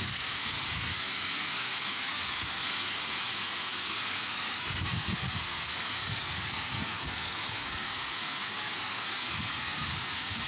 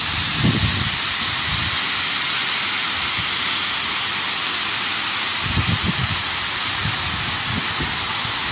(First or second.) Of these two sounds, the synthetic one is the first